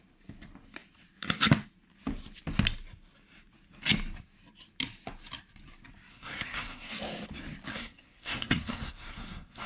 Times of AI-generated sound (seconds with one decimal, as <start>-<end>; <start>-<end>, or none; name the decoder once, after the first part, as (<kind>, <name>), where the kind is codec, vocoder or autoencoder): 6.1-6.9 (codec, SNAC); 7.7-9.7